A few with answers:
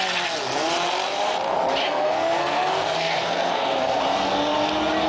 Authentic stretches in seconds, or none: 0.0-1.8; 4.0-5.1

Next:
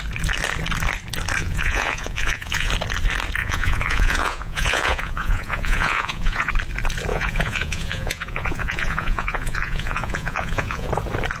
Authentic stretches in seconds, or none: 0.0-1.4; 2.7-3.4; 6.5-7.1; 10.9-11.4

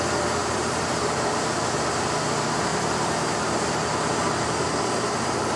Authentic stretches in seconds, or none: 0.0-0.4; 1.6-2.7

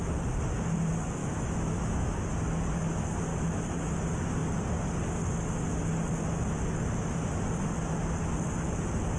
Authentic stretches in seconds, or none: 0.0-1.2; 2.1-3.3; 3.9-9.2